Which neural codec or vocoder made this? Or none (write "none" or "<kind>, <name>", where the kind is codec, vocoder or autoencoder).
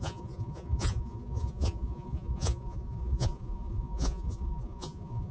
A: vocoder, Vocos